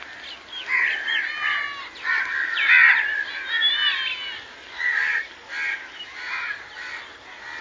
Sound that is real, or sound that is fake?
real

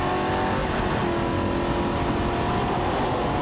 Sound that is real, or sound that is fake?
real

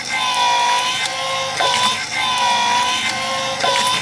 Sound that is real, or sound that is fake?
real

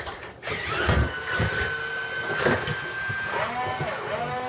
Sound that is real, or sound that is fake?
real